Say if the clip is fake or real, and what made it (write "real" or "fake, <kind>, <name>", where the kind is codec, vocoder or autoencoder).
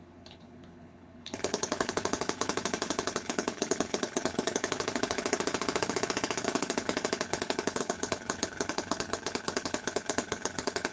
fake, codec, HILCodec